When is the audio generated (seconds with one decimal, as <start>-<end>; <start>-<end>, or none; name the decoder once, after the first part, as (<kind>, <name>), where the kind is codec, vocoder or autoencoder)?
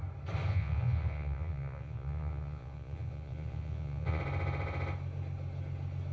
0.5-4.2 (vocoder, Vocos)